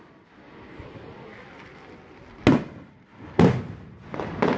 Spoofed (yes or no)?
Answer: no